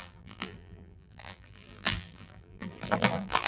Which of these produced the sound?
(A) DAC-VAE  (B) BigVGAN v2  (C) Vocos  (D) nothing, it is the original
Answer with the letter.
B